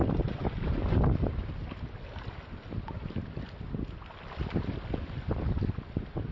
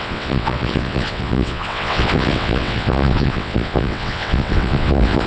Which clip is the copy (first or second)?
second